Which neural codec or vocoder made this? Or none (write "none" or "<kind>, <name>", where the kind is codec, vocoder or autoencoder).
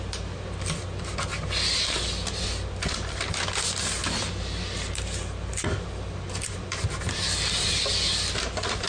none